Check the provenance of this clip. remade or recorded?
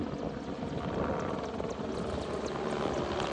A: recorded